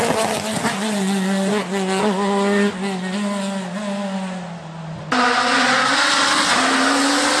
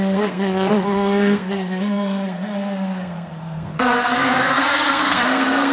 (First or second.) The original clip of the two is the first